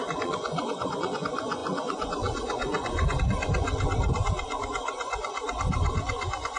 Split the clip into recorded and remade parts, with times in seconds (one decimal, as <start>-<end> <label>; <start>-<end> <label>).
0.0-6.6 remade